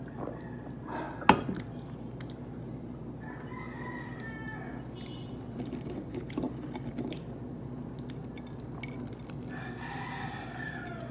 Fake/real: real